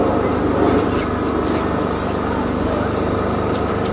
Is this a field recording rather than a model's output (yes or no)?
yes